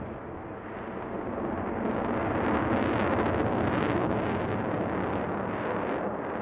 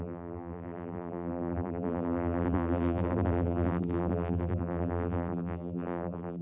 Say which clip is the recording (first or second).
first